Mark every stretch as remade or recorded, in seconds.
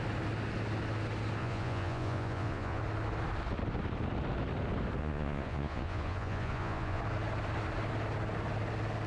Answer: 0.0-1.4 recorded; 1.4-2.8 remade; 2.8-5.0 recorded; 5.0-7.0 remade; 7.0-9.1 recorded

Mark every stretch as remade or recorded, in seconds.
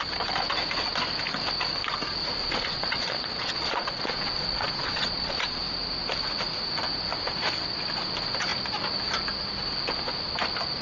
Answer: 0.0-2.4 recorded; 2.4-5.6 remade; 5.6-10.8 recorded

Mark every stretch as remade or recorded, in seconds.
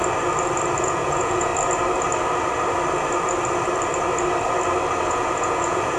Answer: 0.0-0.8 recorded; 0.8-1.5 remade; 1.5-5.1 recorded; 5.1-6.0 remade